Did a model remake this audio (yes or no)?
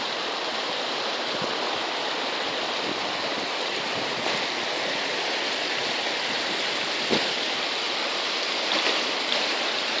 no